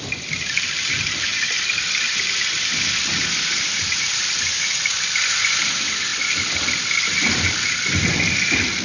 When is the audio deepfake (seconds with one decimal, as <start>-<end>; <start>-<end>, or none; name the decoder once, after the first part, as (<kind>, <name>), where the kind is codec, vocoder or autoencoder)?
1.3-2.0 (codec, DAC)